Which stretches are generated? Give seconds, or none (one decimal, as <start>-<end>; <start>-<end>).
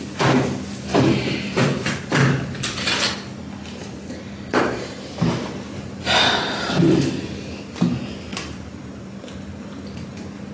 0.9-2.6; 3.8-7.1; 8.3-9.6